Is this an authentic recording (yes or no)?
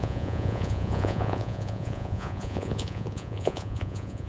no